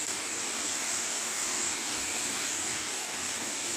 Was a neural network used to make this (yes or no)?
yes